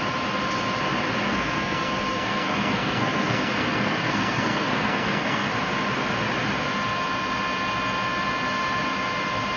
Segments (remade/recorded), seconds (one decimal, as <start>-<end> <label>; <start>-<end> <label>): 0.0-1.3 recorded; 1.3-5.5 remade; 5.5-9.6 recorded